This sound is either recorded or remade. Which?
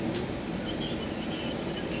recorded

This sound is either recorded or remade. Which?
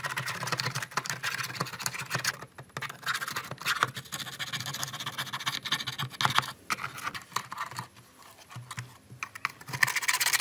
recorded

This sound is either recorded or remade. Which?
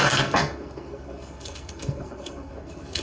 remade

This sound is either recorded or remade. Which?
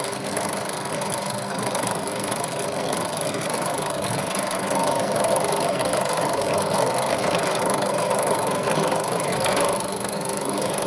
remade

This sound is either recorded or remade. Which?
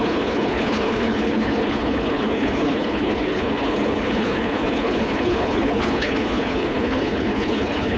remade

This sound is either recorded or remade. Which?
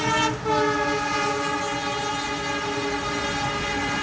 recorded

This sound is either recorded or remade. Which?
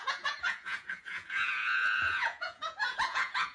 remade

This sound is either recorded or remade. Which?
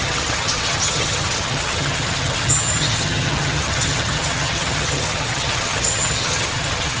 remade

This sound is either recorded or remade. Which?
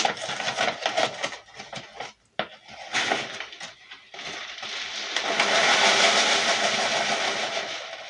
recorded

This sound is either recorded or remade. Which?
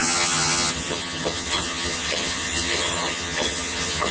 remade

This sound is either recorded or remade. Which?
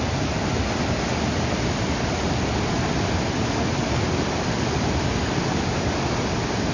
recorded